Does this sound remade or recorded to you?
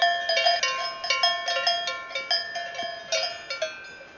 recorded